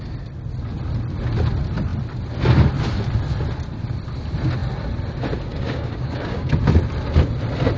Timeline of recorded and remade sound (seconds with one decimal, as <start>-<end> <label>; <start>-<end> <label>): 0.0-5.5 recorded; 5.5-6.5 remade; 6.5-7.8 recorded